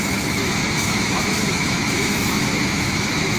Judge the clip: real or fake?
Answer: fake